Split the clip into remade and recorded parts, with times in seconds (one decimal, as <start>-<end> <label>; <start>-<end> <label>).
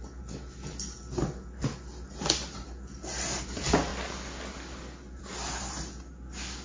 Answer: 0.0-6.6 recorded